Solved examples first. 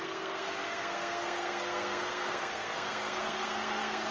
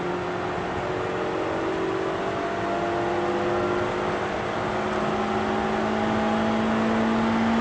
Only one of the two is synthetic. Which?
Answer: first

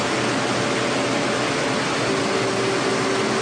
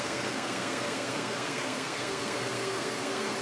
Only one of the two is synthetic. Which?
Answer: second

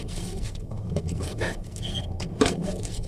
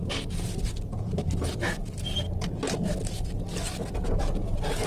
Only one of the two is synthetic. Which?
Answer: first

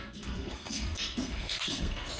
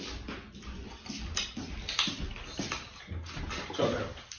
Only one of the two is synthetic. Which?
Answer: first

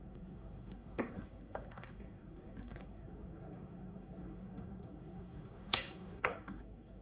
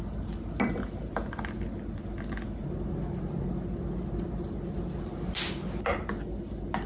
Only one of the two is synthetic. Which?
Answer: first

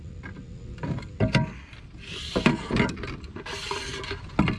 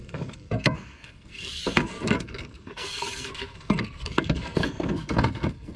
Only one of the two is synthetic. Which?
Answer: second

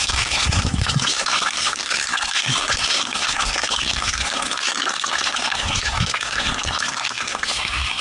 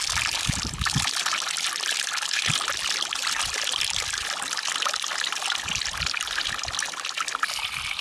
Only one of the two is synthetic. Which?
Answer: first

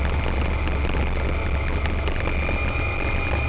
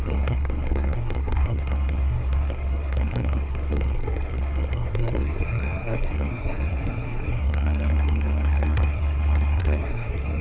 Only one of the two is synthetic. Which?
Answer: second